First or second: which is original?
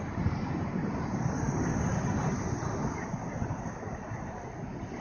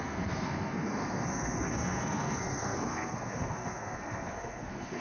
first